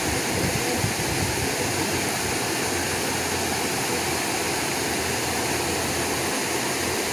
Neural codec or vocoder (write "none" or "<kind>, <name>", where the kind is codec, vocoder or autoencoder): none